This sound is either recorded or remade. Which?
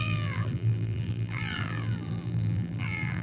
remade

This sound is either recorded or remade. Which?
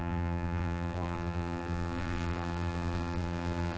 remade